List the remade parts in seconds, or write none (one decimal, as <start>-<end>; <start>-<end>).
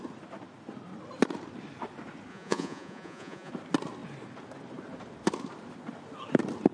2.3-3.5